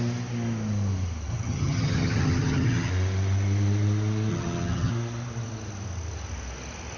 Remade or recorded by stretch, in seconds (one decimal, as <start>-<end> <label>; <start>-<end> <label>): 0.0-1.3 recorded; 1.3-2.9 remade; 2.9-4.3 recorded; 4.3-4.9 remade; 4.9-7.0 recorded